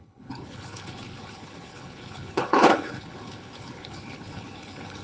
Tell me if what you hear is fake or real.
fake